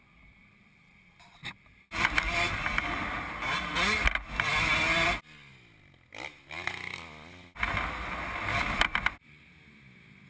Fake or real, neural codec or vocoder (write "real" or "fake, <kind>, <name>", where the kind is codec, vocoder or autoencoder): real